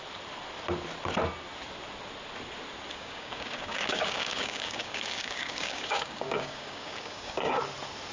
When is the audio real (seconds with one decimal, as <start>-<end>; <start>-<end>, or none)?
0.0-2.9; 7.6-8.1